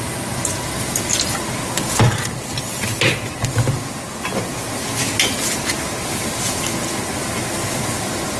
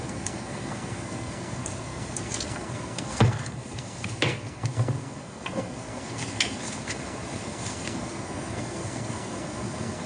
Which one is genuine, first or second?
first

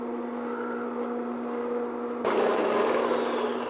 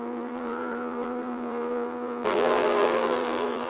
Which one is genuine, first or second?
first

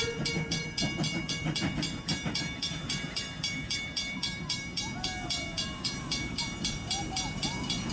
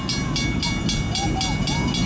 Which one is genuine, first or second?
second